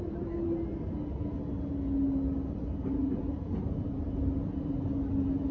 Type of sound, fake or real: real